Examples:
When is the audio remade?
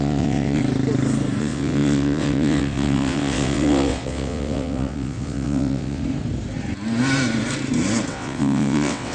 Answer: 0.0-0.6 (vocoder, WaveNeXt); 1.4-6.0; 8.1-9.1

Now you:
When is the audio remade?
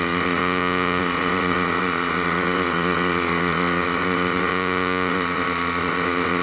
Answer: 0.0-0.4 (vocoder, WaveNeXt); 1.0-4.5; 5.1-6.4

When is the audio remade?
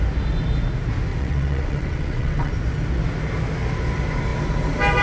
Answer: 1.1-2.5 (vocoder, WaveNeXt)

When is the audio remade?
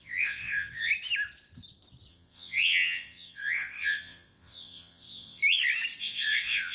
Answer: 0.0-0.9 (vocoder, WaveNeXt); 2.1-5.4; 6.0-6.7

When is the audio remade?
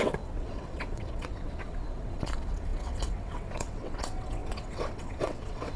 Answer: 0.0-5.8 (vocoder, WaveNeXt)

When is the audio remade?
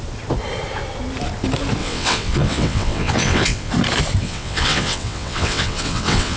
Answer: 1.8-3.7 (vocoder, WaveNeXt); 4.2-6.4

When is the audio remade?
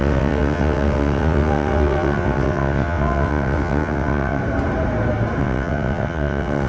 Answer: 0.0-4.4 (vocoder, WaveNeXt); 5.4-6.7